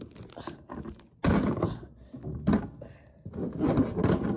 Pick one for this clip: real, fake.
real